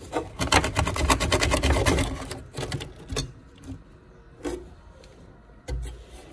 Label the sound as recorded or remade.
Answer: recorded